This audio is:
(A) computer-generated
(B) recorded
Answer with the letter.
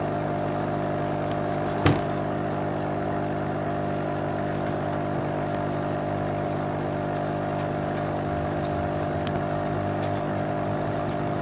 B